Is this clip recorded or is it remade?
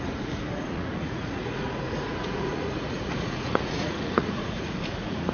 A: remade